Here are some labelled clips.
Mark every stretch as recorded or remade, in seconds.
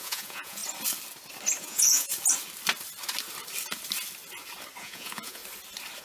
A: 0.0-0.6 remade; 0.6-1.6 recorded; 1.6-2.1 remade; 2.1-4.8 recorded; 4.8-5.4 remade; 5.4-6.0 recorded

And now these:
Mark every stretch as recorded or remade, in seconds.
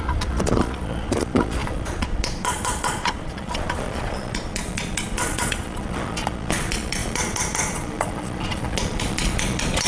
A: 0.0-9.9 remade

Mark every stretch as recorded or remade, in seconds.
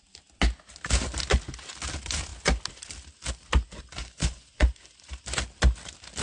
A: 0.0-4.0 recorded; 4.0-4.7 remade; 4.7-6.2 recorded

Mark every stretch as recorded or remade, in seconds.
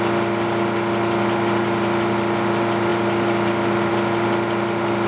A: 0.0-5.1 recorded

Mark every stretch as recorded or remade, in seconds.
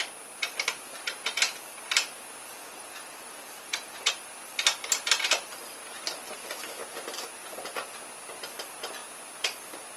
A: 0.0-2.5 recorded; 2.5-4.1 remade; 4.1-10.0 recorded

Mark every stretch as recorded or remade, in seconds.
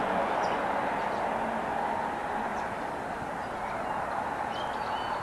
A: 0.0-0.6 remade; 0.6-5.2 recorded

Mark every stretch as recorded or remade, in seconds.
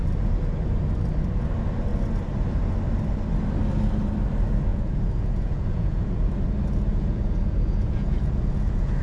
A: 0.0-4.7 recorded; 4.7-6.3 remade; 6.3-6.9 recorded; 6.9-9.0 remade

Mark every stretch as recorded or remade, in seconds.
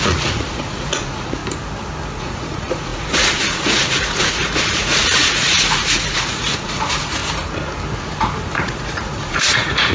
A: 0.0-1.4 remade; 1.4-2.2 recorded; 2.2-7.2 remade; 7.2-8.6 recorded; 8.6-9.9 remade